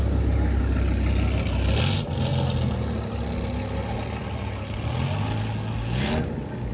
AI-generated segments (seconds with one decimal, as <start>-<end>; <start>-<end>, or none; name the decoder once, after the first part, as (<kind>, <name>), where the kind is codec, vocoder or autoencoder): none